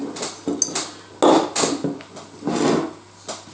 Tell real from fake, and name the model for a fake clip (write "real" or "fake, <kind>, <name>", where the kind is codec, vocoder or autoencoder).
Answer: real